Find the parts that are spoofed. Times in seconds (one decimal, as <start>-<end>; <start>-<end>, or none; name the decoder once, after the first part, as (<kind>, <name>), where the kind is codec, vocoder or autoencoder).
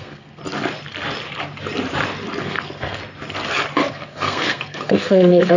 0.0-0.4 (codec, SNAC); 2.4-3.0; 3.9-5.6